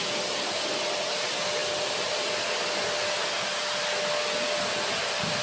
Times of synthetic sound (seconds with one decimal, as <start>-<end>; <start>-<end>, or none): none